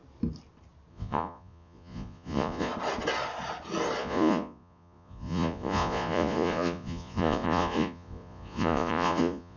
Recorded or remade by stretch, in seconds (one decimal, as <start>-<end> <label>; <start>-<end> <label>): 0.0-0.9 recorded; 0.9-2.7 remade; 2.7-4.0 recorded; 4.0-9.6 remade